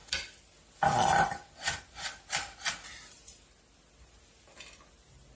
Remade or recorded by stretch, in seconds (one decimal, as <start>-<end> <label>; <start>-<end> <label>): 0.0-5.3 recorded